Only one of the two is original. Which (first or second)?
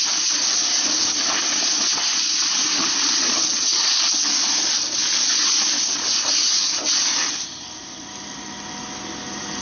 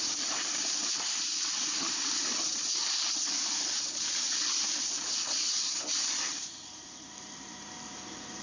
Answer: first